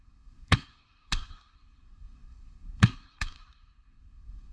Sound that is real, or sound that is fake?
fake